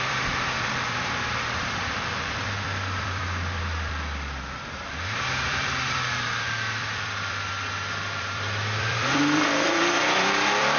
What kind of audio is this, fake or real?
fake